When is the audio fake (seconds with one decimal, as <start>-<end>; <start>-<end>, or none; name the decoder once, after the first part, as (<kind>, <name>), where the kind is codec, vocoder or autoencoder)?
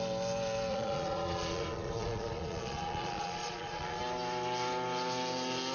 0.7-4.0 (vocoder, Vocos)